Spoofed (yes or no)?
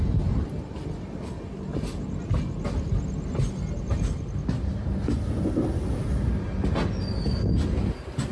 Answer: no